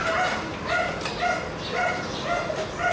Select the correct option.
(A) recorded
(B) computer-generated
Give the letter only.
A